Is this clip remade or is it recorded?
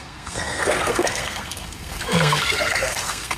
remade